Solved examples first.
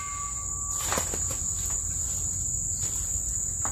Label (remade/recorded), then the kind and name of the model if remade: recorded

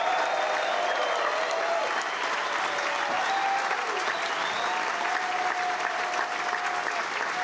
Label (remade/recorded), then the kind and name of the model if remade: recorded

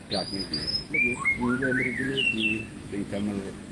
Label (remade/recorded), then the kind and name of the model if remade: remade, autoencoder, DAC-VAE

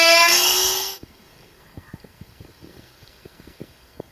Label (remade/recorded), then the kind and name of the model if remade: remade, codec, SNAC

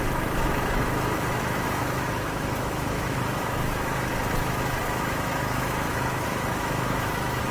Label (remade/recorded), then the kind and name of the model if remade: remade, autoencoder, DAC-VAE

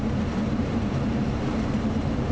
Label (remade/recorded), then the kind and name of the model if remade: remade, vocoder, BigVGAN v2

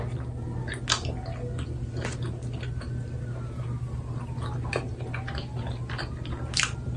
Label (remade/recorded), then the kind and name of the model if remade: recorded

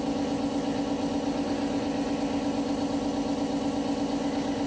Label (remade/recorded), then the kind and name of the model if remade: recorded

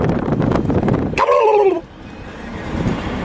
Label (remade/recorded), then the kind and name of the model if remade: remade, vocoder, BigVGAN v2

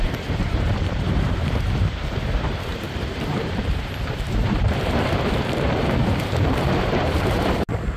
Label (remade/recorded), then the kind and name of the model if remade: remade, vocoder, BigVGAN v2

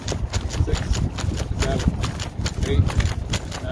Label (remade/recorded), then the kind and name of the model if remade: recorded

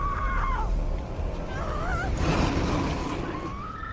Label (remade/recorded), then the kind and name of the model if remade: recorded